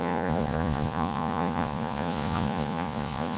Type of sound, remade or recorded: remade